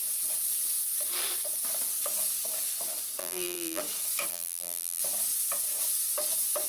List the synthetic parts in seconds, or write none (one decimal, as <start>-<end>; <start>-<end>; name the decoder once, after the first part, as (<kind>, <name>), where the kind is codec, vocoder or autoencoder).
3.2-3.8 (vocoder, BigVGAN v2); 4.3-5.0